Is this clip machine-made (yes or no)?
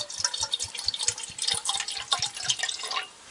no